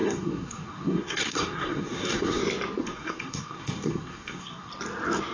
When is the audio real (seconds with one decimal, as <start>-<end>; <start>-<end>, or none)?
2.4-2.8; 4.7-5.3